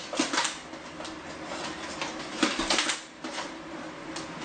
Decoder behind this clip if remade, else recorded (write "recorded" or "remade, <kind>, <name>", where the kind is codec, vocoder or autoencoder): recorded